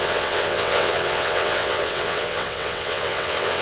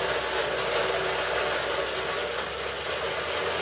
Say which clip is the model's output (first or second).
first